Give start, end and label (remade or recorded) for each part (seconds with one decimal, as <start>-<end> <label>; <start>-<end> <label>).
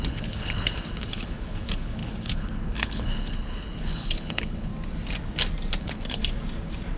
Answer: 0.0-4.7 remade; 4.7-5.8 recorded; 5.8-6.2 remade; 6.2-7.0 recorded